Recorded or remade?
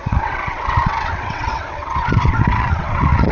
remade